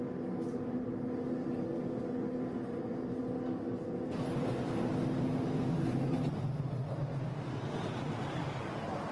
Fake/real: real